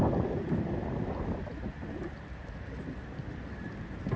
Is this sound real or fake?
real